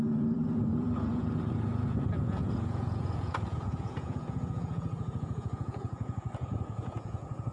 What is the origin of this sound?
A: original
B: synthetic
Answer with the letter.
B